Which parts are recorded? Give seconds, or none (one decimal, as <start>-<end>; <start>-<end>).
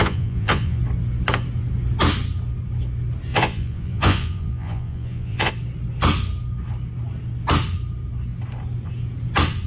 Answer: 0.8-3.3; 5.5-9.7